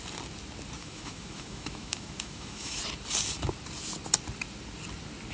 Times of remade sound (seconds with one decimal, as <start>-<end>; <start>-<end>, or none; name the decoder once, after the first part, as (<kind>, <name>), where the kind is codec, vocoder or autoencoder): 0.8-2.8 (autoencoder, DAC-VAE)